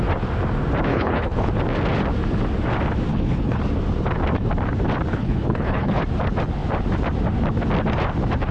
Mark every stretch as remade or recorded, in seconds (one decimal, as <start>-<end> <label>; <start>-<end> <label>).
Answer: 0.0-0.9 recorded; 0.9-1.5 remade; 1.5-3.1 recorded; 3.1-3.6 remade; 3.6-5.1 recorded; 5.1-6.0 remade; 6.0-8.5 recorded